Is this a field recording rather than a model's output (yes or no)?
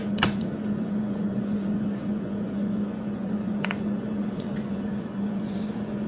no